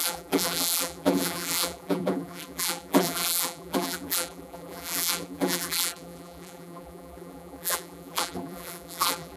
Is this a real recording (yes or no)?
no